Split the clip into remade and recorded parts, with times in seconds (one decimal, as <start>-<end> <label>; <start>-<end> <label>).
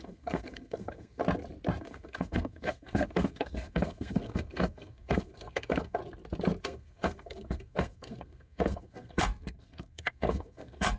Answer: 0.0-1.2 remade; 1.2-1.8 recorded; 1.8-6.0 remade; 6.0-6.6 recorded; 6.6-11.0 remade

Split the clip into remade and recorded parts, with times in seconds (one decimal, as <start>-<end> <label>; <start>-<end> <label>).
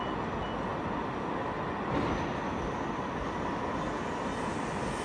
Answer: 0.0-5.0 recorded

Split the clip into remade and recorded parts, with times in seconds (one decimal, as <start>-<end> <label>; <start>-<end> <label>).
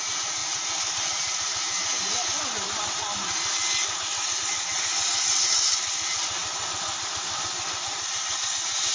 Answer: 0.0-8.9 recorded